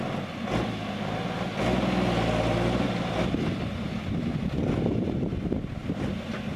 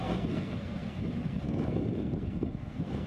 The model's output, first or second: second